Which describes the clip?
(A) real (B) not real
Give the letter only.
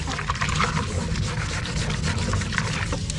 A